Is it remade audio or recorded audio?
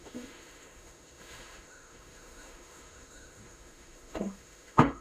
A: remade